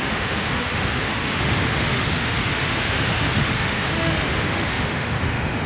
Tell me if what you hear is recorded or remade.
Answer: remade